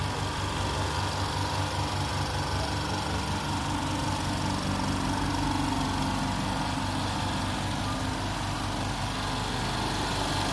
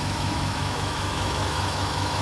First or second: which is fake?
second